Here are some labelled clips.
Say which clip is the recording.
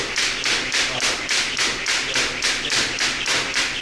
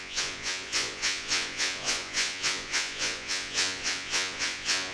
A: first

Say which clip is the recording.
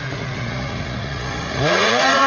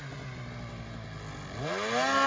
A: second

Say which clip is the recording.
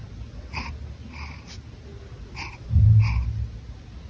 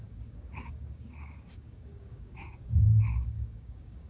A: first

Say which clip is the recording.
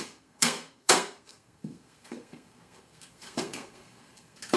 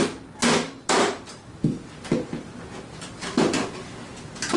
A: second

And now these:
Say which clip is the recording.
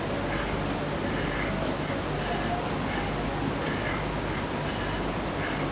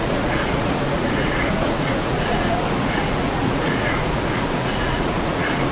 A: first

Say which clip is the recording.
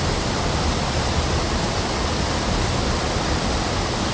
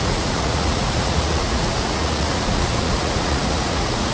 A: first